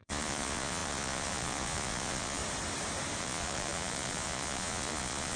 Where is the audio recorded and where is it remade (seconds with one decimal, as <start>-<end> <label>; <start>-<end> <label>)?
0.0-2.4 remade; 2.4-3.2 recorded; 3.2-5.4 remade